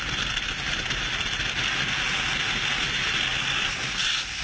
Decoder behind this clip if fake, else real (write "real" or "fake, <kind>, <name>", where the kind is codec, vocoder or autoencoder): real